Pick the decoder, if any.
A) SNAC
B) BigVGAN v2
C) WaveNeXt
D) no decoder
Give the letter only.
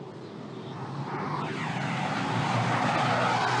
D